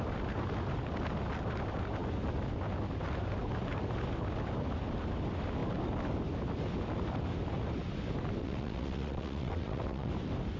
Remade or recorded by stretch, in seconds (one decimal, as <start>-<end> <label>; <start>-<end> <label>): 0.0-8.4 recorded; 8.4-10.1 remade; 10.1-10.6 recorded